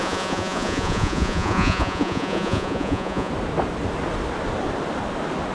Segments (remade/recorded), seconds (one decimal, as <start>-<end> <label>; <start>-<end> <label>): 0.0-3.3 remade; 3.3-5.5 recorded